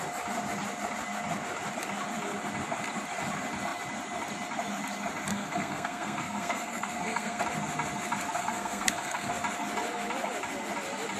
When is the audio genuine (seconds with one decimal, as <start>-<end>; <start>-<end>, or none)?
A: 0.0-5.3; 7.4-8.4; 9.3-11.2